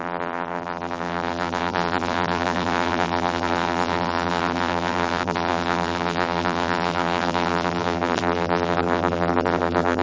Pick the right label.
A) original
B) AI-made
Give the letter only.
B